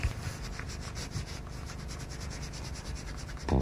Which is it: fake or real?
real